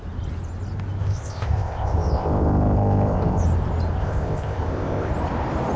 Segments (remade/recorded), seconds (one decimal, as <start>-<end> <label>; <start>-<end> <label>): 0.0-1.0 recorded; 1.0-3.4 remade; 3.4-4.0 recorded; 4.0-5.1 remade; 5.1-5.8 recorded